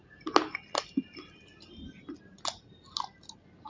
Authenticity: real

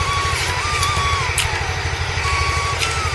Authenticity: real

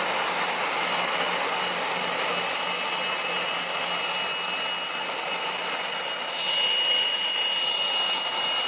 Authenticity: real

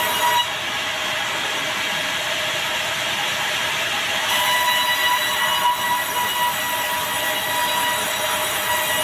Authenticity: real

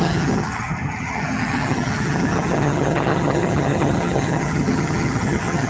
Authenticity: fake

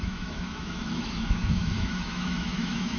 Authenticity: fake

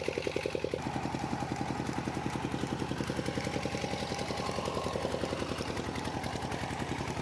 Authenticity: real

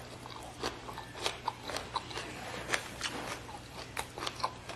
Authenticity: real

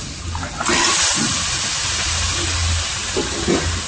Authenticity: real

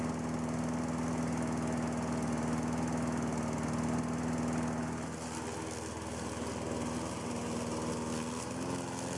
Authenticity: real